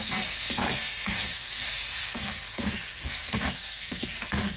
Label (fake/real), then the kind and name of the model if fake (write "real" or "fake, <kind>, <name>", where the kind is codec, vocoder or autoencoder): fake, codec, SNAC